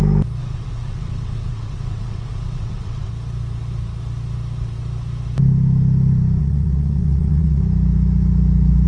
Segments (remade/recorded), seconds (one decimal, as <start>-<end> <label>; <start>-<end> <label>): 0.0-0.4 recorded; 0.4-3.1 remade; 3.1-6.4 recorded; 6.4-7.6 remade; 7.6-8.9 recorded